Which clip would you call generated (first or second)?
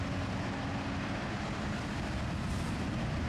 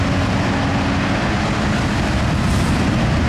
first